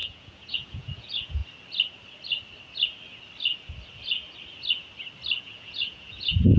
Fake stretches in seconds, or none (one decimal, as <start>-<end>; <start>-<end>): 0.0-1.4; 5.4-6.6